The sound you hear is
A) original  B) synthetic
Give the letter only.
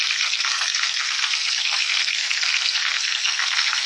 B